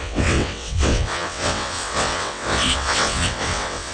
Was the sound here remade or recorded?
remade